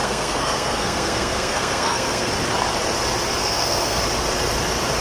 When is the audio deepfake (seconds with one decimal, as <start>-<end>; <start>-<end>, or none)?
0.0-2.3; 3.4-4.0